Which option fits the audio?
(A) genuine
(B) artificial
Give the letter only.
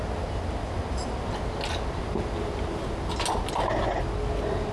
A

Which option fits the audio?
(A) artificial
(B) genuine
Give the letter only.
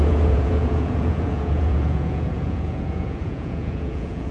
A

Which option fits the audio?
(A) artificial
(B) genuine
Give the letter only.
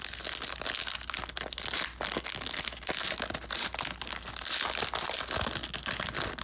B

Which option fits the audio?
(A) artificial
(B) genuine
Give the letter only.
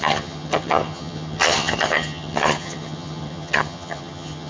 A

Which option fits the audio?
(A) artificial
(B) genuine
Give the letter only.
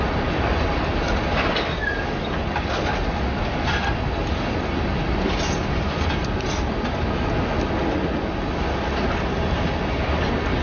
B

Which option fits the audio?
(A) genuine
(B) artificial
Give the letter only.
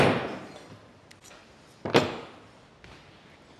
A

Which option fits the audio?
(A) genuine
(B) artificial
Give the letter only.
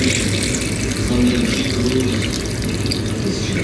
A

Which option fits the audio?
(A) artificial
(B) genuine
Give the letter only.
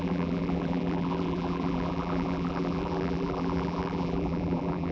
A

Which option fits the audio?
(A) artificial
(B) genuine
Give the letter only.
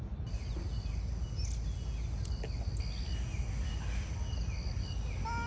B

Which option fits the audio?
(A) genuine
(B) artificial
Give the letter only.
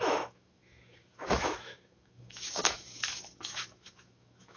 B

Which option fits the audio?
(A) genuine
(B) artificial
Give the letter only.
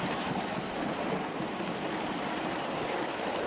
A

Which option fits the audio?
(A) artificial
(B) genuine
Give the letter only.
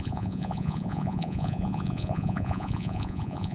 A